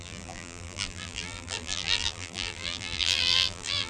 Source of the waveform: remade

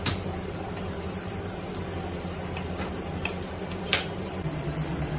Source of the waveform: remade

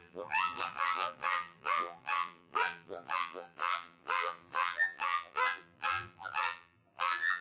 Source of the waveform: remade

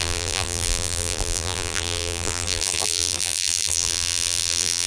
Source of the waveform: remade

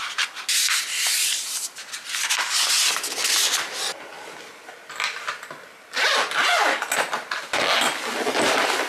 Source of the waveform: recorded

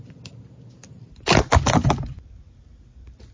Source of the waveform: recorded